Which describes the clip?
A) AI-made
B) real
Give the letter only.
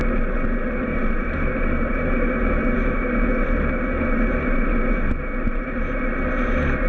B